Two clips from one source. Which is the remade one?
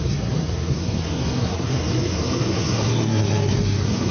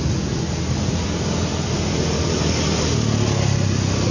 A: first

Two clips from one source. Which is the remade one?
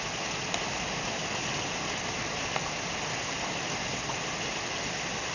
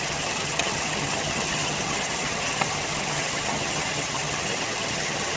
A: second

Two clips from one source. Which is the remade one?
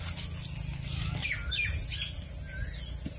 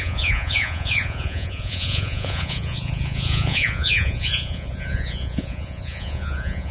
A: second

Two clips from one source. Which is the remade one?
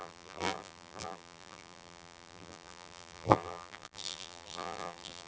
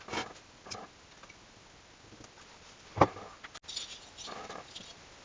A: first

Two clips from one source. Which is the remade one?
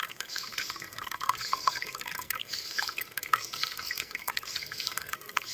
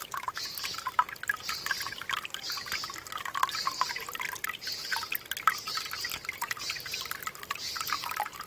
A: first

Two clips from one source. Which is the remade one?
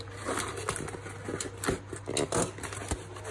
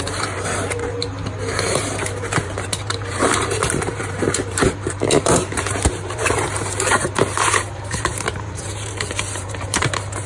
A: second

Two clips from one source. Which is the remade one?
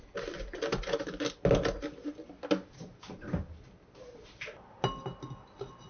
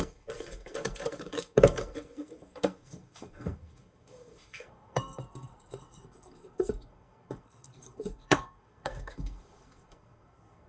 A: second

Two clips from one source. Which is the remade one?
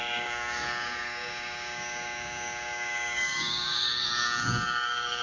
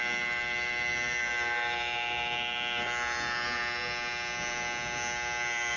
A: first